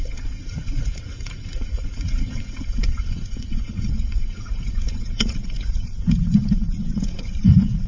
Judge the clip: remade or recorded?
remade